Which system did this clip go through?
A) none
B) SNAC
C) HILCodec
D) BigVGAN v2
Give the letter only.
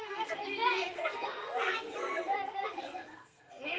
B